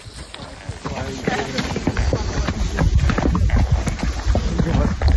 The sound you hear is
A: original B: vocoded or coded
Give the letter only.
A